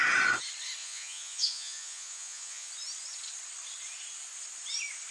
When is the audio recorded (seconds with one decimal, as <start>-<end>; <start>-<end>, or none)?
0.0-0.8; 2.7-5.1